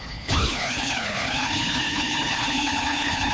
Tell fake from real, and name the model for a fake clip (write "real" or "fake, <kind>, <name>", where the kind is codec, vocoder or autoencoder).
fake, codec, HILCodec